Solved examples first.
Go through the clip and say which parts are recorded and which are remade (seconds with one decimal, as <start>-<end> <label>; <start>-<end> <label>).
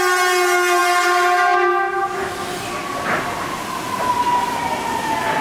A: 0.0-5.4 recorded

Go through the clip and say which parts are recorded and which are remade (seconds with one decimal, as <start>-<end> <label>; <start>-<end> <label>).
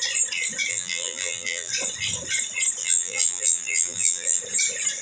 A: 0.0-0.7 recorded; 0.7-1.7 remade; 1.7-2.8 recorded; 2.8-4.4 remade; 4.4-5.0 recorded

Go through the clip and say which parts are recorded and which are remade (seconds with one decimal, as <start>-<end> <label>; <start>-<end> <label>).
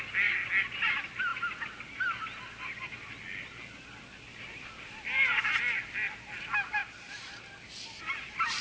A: 0.0-8.6 recorded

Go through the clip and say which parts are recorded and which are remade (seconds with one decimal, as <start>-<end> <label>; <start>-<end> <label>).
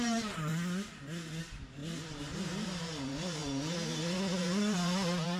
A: 0.0-0.5 remade; 0.5-1.4 recorded; 1.4-5.4 remade